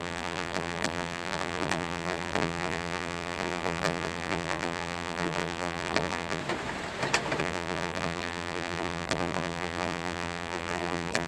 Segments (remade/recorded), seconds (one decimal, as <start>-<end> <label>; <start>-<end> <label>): 0.0-6.4 remade; 6.4-7.4 recorded; 7.4-11.3 remade